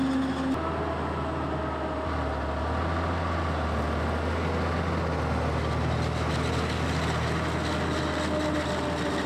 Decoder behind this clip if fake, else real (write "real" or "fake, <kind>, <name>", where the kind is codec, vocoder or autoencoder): real